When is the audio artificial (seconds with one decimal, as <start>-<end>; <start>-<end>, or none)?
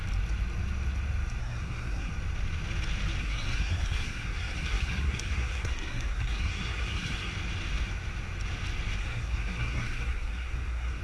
1.4-2.1; 3.2-7.3; 9.0-11.0